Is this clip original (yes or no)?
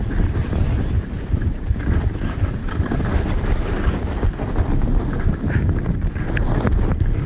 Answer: yes